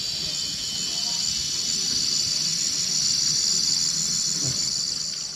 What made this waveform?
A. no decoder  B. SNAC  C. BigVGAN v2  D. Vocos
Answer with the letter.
A